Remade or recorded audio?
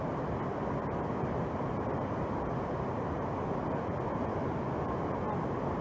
recorded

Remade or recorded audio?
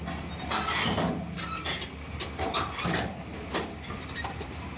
recorded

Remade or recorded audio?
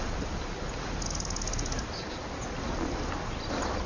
recorded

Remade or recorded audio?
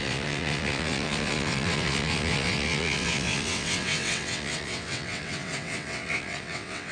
remade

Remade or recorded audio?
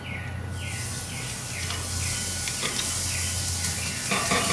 recorded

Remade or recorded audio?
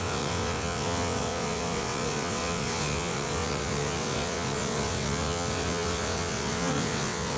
remade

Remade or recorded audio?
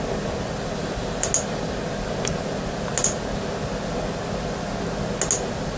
recorded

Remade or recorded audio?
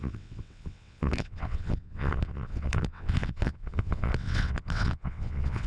remade